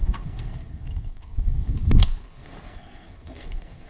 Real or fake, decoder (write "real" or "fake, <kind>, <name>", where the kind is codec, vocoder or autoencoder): fake, codec, SNAC